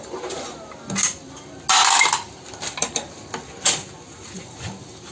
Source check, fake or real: real